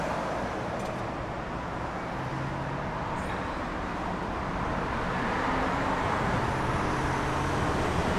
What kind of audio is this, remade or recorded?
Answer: recorded